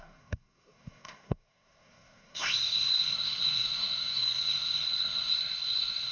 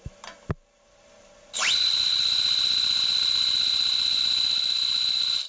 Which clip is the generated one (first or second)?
first